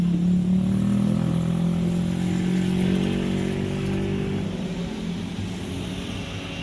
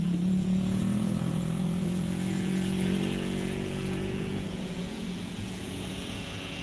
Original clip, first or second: first